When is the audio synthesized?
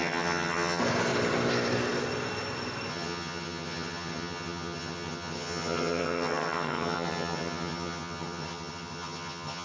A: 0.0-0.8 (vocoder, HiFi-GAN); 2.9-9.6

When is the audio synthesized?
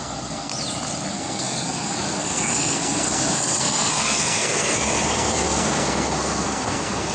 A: 0.0-0.5 (codec, SNAC); 1.1-7.1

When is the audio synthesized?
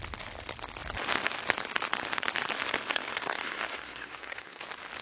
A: 2.9-4.6 (codec, SNAC)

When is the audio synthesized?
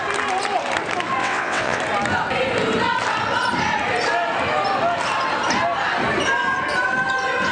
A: 1.2-1.8 (vocoder, WaveNeXt)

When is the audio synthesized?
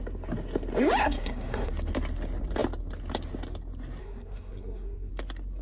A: 1.0-1.7 (codec, SNAC); 4.0-5.1